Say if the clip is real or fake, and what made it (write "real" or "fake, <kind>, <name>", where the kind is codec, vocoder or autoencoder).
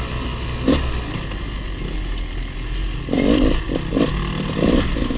real